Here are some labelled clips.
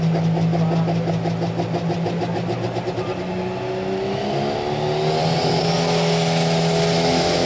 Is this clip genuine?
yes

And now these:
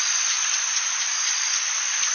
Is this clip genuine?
yes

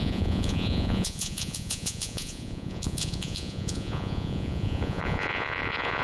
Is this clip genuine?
no